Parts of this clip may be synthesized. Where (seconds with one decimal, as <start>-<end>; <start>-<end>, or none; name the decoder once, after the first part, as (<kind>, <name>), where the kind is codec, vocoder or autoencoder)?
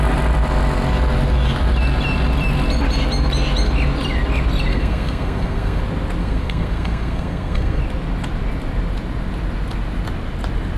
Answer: 4.7-5.8 (codec, SNAC); 6.2-7.8